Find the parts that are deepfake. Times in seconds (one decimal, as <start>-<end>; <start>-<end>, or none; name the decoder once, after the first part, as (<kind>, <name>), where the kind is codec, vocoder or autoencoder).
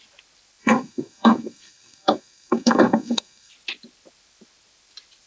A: 0.6-3.5 (codec, SNAC)